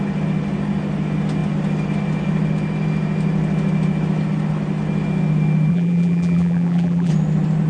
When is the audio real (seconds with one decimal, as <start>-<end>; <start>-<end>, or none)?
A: 0.0-5.7; 7.1-7.7